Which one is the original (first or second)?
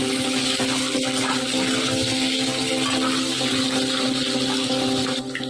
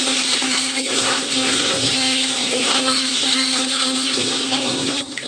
first